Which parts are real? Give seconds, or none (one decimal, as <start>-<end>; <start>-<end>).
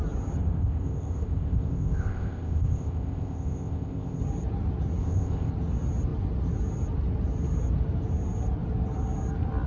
0.0-0.4; 4.2-5.0; 5.5-9.7